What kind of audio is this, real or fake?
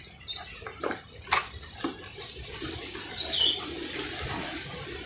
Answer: real